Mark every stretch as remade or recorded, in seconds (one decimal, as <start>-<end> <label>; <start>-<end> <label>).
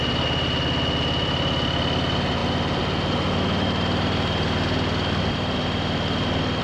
0.0-6.6 recorded